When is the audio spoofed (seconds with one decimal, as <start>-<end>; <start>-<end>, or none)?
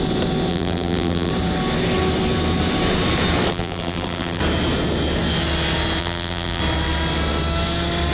0.5-1.3; 3.5-4.4; 6.0-6.6